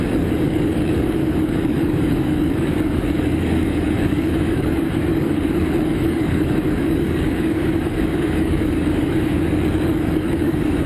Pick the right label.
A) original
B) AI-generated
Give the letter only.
B